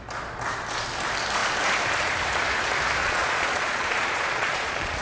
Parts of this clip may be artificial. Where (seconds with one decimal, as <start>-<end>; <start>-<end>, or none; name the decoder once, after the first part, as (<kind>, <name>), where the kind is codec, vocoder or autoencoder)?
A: 3.0-5.0 (vocoder, Vocos)